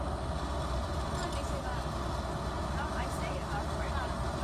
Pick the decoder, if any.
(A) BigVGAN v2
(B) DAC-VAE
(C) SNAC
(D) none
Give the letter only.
D